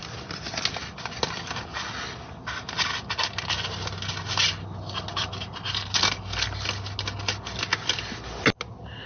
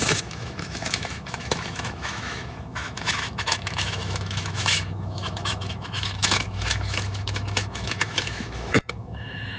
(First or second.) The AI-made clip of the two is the second